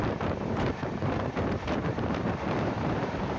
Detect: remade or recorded remade